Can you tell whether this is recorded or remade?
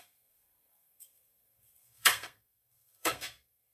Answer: remade